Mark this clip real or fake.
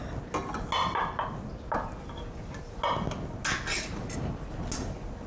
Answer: real